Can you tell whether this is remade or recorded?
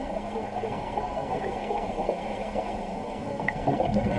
remade